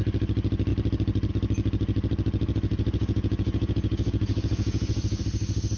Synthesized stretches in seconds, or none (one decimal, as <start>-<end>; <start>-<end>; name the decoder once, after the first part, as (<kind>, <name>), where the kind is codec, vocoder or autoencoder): 2.7-5.2 (vocoder, Vocos)